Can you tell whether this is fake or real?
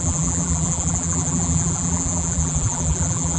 fake